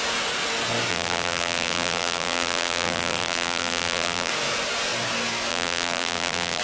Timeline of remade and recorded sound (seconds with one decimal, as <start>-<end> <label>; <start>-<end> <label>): 0.0-0.9 recorded; 0.9-4.3 remade; 4.3-5.5 recorded; 5.5-6.6 remade